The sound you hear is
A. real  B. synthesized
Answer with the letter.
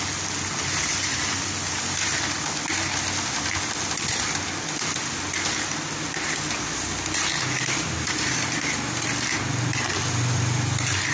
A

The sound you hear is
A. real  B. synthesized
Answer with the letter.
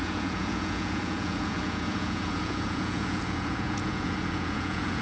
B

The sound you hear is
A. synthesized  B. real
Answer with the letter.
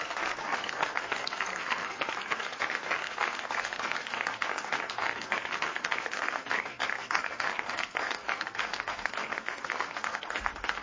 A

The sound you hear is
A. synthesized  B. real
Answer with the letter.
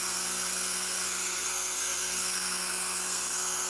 A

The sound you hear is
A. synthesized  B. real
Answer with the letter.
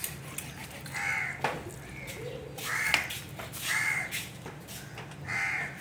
B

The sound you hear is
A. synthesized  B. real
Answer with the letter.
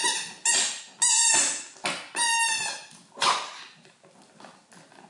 B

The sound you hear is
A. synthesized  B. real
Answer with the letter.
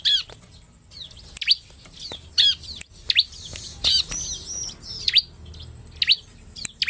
B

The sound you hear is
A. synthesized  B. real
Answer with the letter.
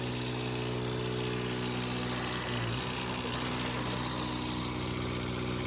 B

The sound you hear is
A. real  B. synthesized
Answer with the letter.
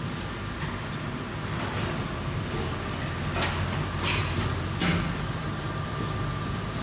A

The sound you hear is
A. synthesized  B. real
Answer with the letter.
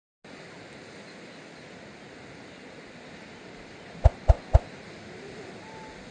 B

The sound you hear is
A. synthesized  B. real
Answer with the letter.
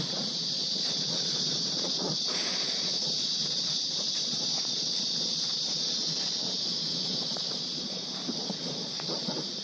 A